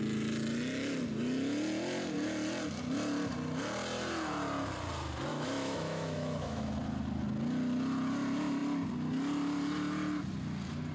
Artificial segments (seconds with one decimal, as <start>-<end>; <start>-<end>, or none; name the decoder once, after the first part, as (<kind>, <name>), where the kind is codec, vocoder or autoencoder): 5.3-6.7 (autoencoder, DAC-VAE)